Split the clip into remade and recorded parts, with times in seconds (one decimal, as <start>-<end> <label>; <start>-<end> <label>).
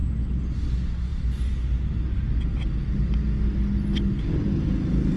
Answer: 0.0-5.2 recorded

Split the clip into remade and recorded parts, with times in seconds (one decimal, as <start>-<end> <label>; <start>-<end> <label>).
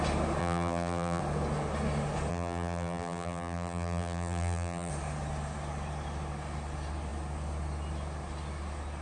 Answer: 0.0-0.4 recorded; 0.4-1.2 remade; 1.2-2.3 recorded; 2.3-4.9 remade; 4.9-9.0 recorded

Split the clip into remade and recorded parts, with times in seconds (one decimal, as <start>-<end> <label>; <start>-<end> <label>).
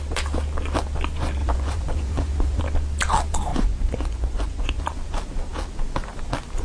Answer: 0.0-1.4 recorded; 1.4-2.6 remade; 2.6-3.5 recorded; 3.5-4.8 remade; 4.8-6.6 recorded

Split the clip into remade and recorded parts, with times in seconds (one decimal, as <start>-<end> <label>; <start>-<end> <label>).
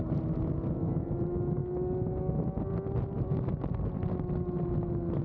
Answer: 0.0-5.2 recorded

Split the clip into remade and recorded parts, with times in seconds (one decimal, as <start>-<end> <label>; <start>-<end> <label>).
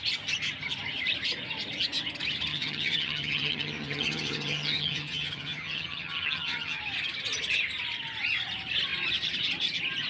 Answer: 0.0-2.5 recorded; 2.5-6.8 remade; 6.8-10.1 recorded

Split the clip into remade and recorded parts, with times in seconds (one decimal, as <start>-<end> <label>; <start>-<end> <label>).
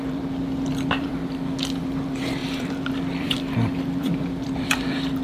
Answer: 0.0-1.1 remade; 1.1-1.8 recorded; 1.8-5.2 remade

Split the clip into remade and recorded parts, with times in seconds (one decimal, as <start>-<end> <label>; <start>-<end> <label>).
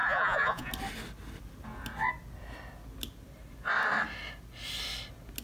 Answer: 0.0-0.7 remade; 0.7-5.4 recorded